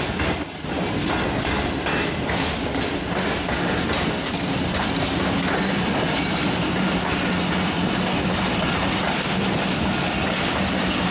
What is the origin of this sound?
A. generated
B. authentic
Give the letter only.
B